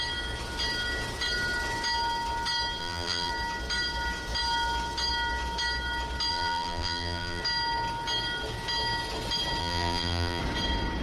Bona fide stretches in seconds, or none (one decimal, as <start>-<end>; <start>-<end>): 0.0-2.8; 3.3-6.3; 7.4-9.6; 10.4-11.0